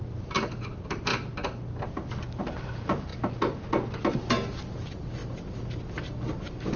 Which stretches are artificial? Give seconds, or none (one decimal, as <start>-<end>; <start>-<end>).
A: none